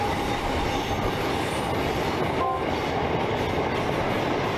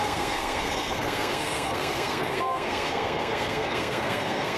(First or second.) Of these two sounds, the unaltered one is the first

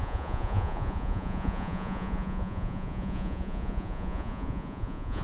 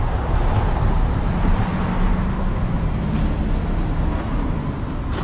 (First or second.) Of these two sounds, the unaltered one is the second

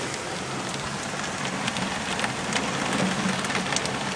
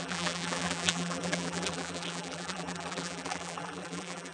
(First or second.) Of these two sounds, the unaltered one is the first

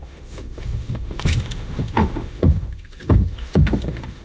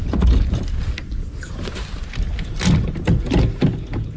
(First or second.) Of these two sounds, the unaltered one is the second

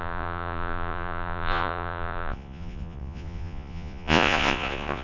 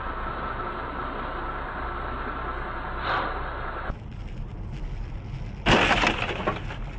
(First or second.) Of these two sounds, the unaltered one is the second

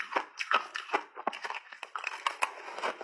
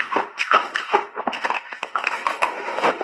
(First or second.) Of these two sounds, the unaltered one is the first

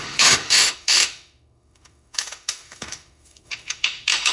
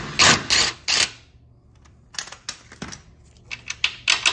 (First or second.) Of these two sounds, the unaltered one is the second